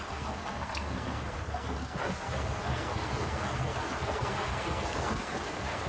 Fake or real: fake